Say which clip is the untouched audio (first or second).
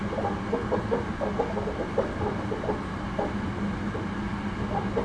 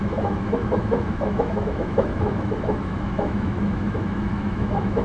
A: first